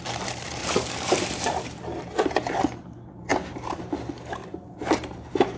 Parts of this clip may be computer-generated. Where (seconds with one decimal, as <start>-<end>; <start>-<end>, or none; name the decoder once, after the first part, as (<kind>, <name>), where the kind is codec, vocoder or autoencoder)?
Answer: 0.6-1.6 (vocoder, BigVGAN v2); 3.3-3.8; 4.4-5.1